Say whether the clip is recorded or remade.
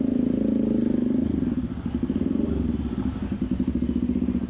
recorded